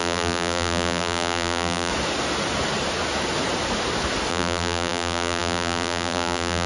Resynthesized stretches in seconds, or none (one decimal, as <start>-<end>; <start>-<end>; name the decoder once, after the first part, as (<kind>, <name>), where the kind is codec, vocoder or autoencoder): 0.0-1.9 (vocoder, BigVGAN v2); 4.3-6.7